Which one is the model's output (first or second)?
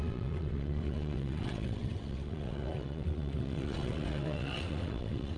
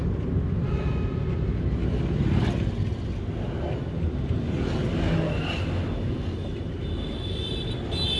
first